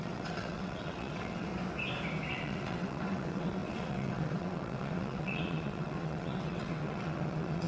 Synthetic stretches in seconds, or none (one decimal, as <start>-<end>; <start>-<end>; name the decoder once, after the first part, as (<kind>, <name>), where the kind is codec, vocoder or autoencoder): 0.0-1.5 (vocoder, WaveNeXt); 2.3-7.7